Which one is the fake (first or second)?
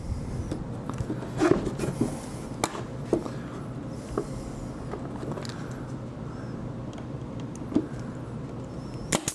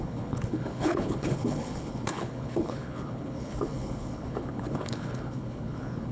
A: second